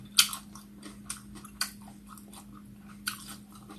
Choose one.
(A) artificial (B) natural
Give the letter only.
B